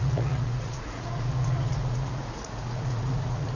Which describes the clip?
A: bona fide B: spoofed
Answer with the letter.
B